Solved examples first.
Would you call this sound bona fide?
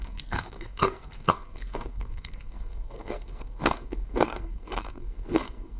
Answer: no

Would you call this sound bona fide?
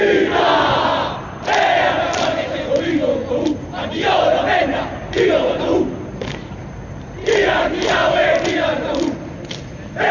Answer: yes